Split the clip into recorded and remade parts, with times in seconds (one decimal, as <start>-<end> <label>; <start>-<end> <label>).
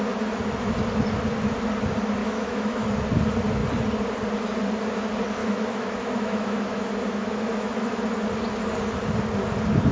0.0-2.2 recorded; 2.2-2.9 remade; 2.9-5.4 recorded; 5.4-8.0 remade; 8.0-9.9 recorded